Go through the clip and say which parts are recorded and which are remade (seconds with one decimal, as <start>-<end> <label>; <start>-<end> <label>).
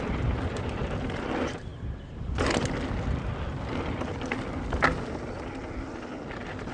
0.0-6.7 recorded